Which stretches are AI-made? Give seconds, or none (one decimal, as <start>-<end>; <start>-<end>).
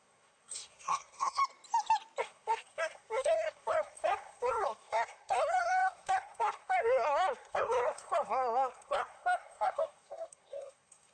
0.0-1.4; 2.2-11.1